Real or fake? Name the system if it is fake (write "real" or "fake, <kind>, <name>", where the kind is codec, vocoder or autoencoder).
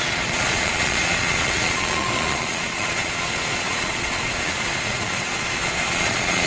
fake, vocoder, Vocos